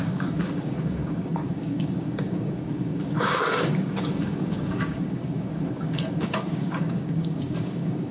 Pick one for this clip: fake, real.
fake